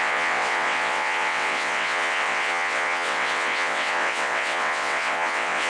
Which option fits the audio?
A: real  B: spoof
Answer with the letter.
B